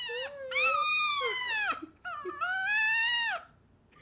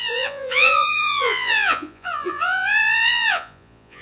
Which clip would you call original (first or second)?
first